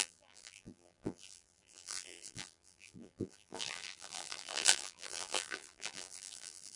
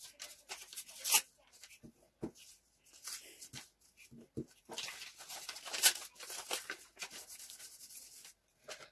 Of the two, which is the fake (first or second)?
first